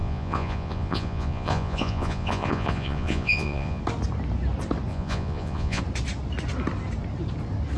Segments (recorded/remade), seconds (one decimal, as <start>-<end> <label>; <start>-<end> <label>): 0.0-3.8 remade; 3.8-4.9 recorded; 4.9-5.8 remade; 5.8-7.8 recorded